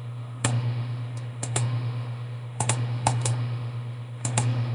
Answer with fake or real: fake